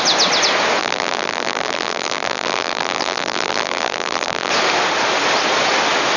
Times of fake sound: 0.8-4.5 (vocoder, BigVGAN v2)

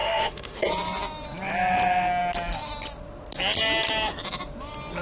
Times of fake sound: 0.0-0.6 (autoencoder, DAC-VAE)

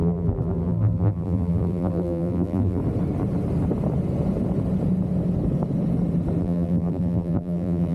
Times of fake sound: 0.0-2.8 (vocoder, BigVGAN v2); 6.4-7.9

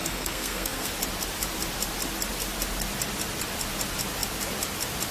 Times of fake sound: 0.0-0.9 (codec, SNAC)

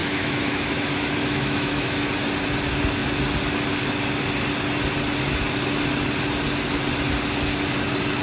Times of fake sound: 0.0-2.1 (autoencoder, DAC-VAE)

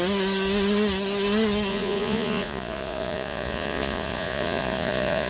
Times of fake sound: 1.7-5.3 (vocoder, Vocos)

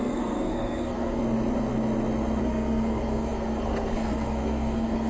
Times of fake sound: 0.0-1.2 (codec, SNAC); 2.4-5.1

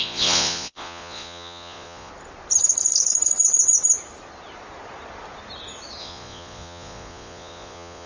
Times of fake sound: 0.0-2.1 (vocoder, Vocos); 6.0-8.1